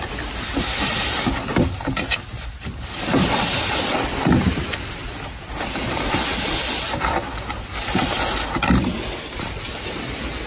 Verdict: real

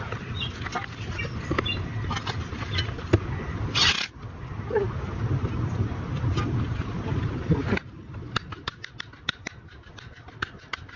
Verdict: real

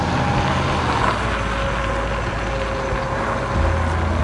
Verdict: real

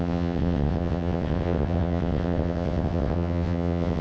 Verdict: fake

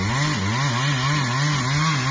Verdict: real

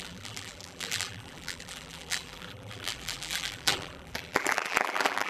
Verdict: fake